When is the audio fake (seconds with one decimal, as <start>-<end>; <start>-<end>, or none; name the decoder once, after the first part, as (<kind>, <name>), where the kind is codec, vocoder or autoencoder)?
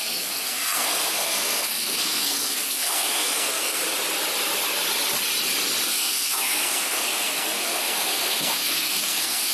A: 0.0-3.8 (codec, SNAC); 5.9-9.5